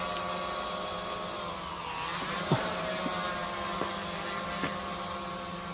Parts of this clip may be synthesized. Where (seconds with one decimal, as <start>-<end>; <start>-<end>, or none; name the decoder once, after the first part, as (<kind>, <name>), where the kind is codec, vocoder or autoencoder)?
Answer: 2.1-2.9 (vocoder, BigVGAN v2)